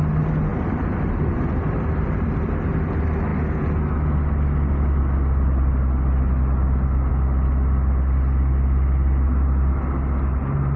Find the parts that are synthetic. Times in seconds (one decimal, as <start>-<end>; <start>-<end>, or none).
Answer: none